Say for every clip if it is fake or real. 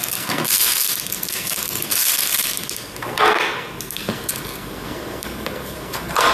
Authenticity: fake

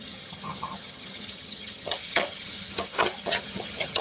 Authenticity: fake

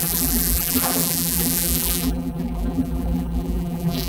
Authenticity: fake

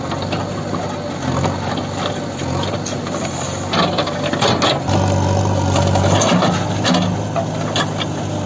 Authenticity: real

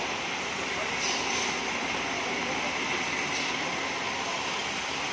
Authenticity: real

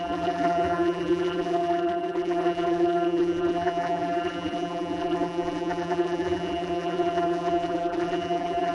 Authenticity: fake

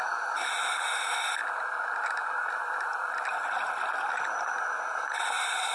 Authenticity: real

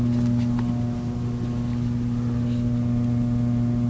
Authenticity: real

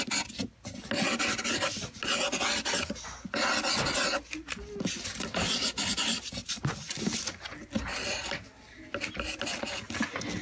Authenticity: real